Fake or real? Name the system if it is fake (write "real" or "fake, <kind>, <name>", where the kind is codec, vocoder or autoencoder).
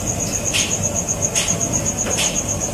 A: real